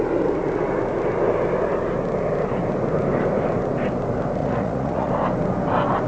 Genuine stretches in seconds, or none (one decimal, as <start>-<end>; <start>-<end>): 0.0-4.4; 5.1-6.1